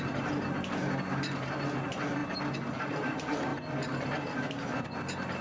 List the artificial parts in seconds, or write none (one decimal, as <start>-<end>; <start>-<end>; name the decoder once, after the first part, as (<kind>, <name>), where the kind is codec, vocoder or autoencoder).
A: none